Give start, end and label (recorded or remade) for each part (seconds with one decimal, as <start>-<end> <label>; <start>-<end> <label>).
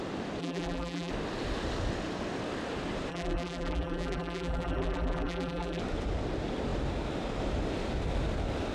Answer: 0.0-0.4 recorded; 0.4-1.1 remade; 1.1-3.1 recorded; 3.1-5.8 remade; 5.8-8.7 recorded